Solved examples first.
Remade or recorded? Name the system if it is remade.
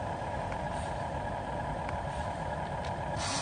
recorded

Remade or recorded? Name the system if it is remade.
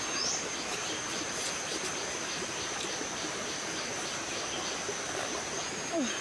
recorded